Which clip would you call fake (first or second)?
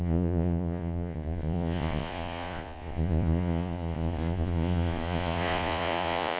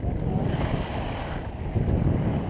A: first